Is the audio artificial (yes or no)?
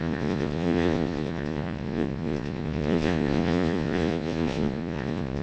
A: yes